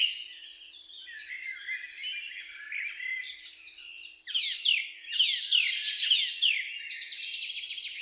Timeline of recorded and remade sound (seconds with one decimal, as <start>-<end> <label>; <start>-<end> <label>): 0.0-8.0 recorded